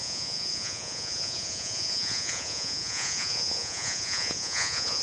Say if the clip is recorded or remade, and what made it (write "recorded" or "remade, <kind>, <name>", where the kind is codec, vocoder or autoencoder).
remade, vocoder, Vocos